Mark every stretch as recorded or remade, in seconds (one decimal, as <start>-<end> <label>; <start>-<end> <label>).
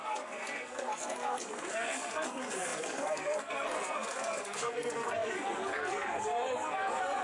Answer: 0.0-7.2 remade